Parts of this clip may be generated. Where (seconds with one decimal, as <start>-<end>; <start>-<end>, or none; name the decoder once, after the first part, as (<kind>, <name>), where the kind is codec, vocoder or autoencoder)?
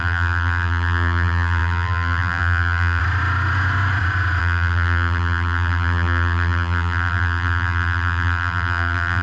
0.0-3.0 (vocoder, BigVGAN v2); 4.4-9.2